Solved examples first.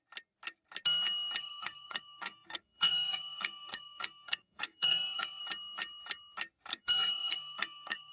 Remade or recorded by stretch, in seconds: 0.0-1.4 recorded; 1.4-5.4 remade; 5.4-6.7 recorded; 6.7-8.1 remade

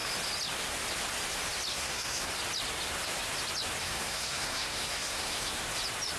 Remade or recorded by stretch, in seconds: 0.0-1.7 recorded; 1.7-2.3 remade; 2.3-3.8 recorded; 3.8-5.5 remade; 5.5-6.2 recorded